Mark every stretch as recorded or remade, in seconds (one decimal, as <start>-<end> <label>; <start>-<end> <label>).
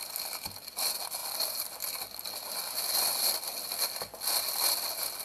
0.0-5.2 recorded